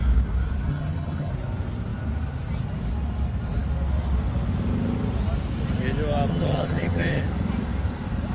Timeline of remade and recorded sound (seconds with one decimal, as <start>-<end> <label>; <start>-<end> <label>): 0.0-0.7 recorded; 0.7-1.3 remade; 1.3-6.3 recorded; 6.3-7.2 remade; 7.2-8.3 recorded